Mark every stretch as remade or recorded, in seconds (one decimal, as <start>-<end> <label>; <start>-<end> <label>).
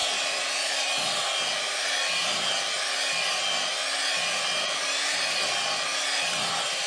0.0-6.9 recorded